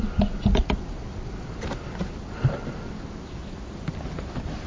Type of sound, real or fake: real